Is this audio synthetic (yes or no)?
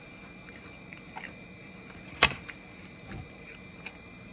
yes